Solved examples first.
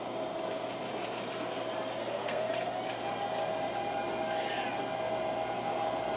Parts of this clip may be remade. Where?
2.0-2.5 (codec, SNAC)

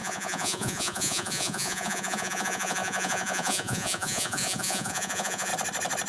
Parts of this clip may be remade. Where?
0.0-5.5 (vocoder, Vocos)

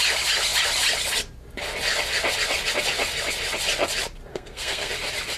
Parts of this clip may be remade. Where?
4.3-4.9 (codec, SNAC)

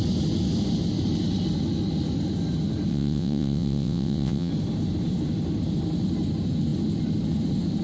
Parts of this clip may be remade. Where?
2.9-4.5 (vocoder, WaveNeXt)

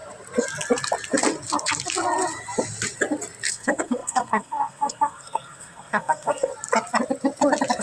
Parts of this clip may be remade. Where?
3.5-6.5 (codec, SNAC)

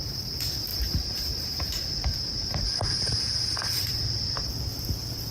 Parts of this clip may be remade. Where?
0.7-3.9 (vocoder, BigVGAN v2)

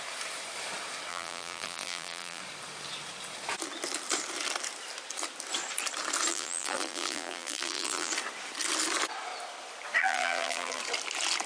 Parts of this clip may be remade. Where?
1.1-2.4 (vocoder, BigVGAN v2); 6.3-8.1; 10.0-10.8